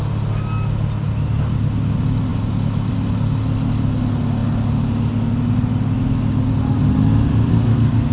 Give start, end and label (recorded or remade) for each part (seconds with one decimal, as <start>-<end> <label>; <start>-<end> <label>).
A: 0.0-7.5 recorded; 7.5-8.1 remade